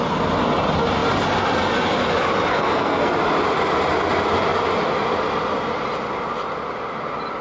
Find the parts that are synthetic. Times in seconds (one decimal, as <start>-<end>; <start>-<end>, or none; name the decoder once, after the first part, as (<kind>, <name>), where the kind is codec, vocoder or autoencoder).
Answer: 2.5-3.1 (codec, SNAC)

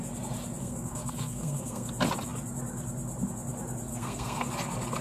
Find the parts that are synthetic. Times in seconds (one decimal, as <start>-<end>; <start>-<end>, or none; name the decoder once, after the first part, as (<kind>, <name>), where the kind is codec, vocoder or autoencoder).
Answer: 0.6-1.9 (codec, SNAC); 3.9-4.5

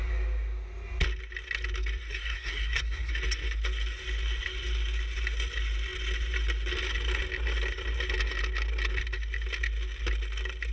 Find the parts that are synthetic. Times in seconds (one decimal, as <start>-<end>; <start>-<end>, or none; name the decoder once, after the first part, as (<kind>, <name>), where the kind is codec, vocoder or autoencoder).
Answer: 2.1-3.1 (codec, SNAC)

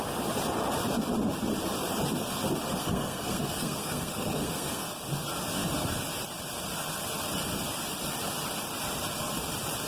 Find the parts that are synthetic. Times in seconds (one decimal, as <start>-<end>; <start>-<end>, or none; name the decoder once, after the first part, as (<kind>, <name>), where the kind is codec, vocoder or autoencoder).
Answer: 2.8-5.0 (codec, SNAC)

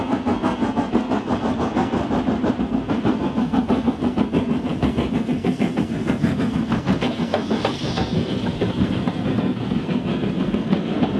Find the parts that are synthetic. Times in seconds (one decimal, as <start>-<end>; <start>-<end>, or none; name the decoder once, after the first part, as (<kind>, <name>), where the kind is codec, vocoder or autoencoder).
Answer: 0.0-2.0 (codec, SNAC); 2.6-11.2

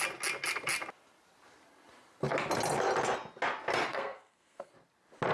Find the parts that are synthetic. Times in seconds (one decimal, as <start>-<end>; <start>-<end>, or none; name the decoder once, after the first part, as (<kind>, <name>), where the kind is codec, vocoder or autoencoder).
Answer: 3.9-4.7 (codec, SNAC)

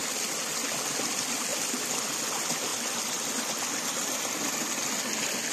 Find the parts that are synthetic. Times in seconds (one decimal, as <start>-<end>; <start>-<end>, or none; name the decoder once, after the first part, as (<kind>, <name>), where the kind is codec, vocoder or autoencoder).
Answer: none

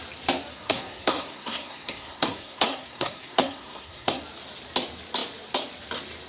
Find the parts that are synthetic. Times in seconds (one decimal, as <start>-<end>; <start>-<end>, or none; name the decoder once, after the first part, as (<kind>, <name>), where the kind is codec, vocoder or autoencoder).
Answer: 0.5-4.2 (codec, SNAC)